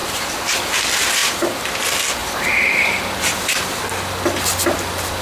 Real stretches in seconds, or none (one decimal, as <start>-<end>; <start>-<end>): 0.6-1.2; 1.7-2.2; 3.8-5.2